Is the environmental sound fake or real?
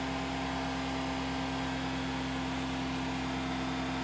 real